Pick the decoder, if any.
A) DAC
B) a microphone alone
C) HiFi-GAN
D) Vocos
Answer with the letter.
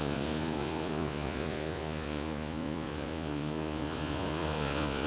D